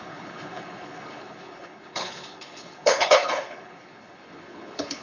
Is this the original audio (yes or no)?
no